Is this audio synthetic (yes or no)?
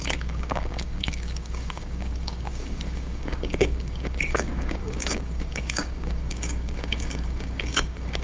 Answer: yes